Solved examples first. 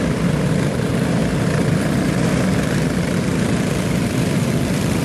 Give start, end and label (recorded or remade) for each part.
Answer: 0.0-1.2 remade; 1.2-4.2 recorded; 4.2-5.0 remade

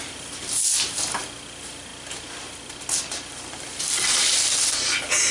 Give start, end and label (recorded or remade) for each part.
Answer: 0.0-5.3 recorded